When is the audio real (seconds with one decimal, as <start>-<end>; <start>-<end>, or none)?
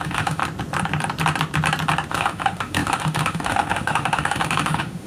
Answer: 0.4-2.1